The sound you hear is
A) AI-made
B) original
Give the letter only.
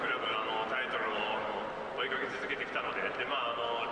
B